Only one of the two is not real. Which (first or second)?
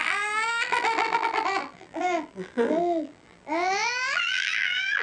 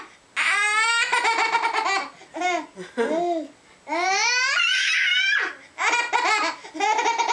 first